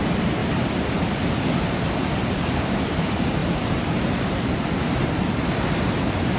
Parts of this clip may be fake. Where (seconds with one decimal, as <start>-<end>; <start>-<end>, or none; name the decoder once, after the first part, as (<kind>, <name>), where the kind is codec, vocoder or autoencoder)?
0.0-0.4 (vocoder, BigVGAN v2); 1.3-6.4